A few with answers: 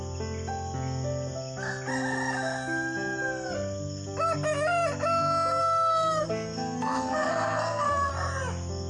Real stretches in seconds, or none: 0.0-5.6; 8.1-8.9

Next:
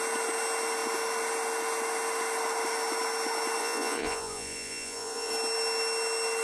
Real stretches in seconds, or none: 0.0-3.6; 5.3-6.4

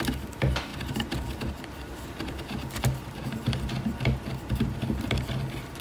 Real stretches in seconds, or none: 0.0-5.8

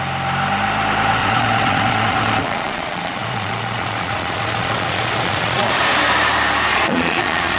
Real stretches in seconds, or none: 0.0-1.2; 5.7-6.7

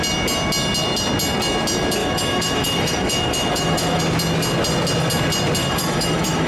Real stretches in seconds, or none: 0.0-2.0; 4.0-5.6